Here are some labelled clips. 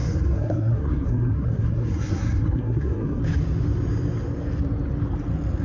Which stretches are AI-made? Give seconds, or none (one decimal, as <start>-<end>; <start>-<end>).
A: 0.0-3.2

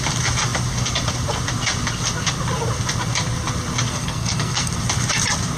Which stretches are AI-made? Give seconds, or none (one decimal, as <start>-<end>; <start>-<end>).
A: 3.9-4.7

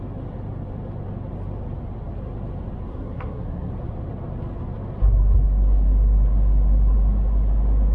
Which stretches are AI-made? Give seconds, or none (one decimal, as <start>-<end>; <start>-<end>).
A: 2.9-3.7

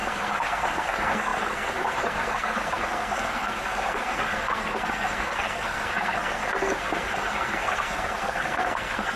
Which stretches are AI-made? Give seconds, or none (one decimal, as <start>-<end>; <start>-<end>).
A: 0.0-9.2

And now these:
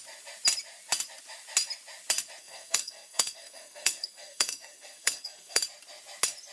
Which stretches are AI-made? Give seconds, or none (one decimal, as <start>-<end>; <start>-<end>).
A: 2.4-5.6

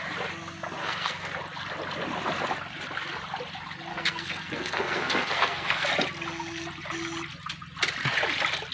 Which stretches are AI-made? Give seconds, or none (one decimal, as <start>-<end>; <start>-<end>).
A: 0.8-1.4; 3.9-5.9